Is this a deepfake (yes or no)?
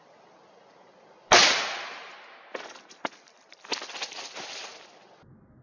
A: no